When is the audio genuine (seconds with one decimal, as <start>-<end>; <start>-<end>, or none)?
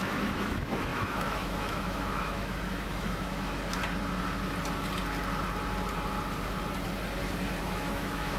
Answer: 3.8-7.6